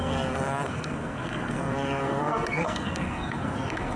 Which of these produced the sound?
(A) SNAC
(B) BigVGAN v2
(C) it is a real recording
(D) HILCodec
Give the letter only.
A